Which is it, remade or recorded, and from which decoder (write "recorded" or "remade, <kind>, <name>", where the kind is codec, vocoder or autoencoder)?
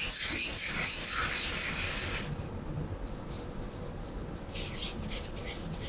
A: recorded